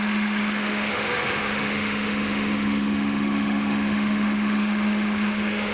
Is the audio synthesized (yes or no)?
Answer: yes